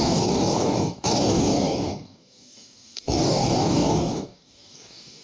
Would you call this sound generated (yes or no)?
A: yes